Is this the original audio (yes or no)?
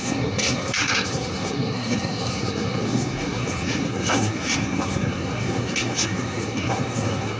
no